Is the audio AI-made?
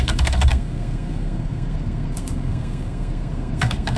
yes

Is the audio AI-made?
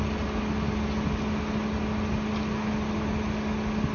no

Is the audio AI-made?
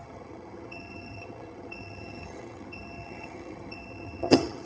yes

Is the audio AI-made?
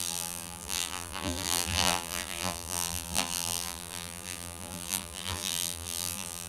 yes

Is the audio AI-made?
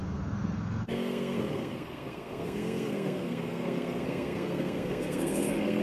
yes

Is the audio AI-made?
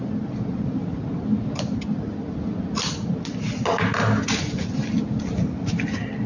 no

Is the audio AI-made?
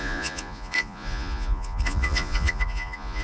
yes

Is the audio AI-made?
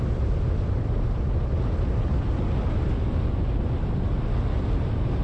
no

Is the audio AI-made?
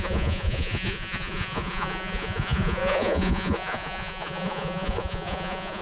yes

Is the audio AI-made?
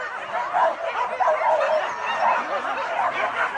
no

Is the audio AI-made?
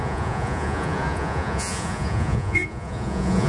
yes